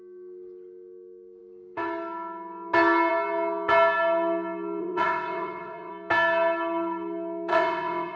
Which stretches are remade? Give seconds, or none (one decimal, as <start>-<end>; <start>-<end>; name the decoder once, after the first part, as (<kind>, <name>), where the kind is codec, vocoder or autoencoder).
4.8-5.9 (vocoder, WaveNeXt); 7.5-8.2